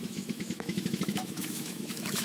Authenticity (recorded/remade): remade